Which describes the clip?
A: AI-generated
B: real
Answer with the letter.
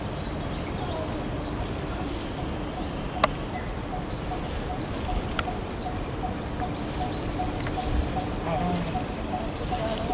B